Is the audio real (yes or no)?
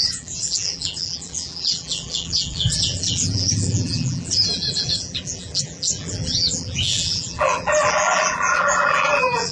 no